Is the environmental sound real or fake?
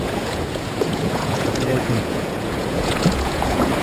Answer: fake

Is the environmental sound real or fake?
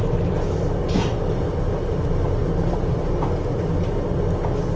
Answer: real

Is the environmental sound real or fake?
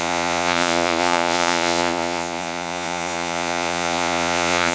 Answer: fake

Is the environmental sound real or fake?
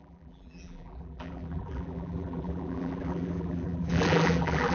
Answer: fake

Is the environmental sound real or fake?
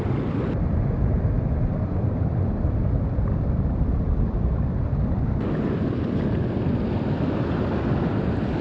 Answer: real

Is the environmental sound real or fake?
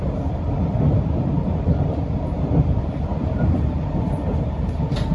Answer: fake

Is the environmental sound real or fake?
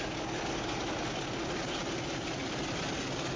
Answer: real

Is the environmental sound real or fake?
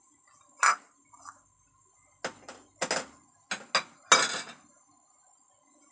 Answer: real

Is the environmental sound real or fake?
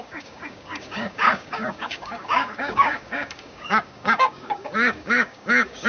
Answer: fake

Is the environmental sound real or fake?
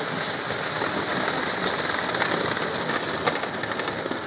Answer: real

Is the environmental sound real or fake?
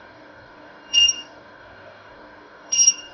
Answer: fake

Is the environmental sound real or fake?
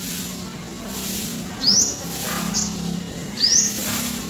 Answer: real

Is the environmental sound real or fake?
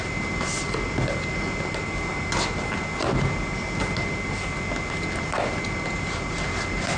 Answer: real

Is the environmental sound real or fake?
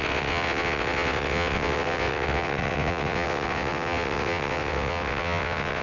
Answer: fake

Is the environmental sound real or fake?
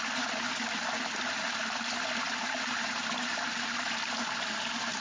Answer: real